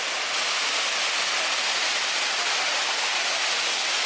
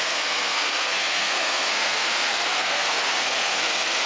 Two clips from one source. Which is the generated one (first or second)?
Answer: second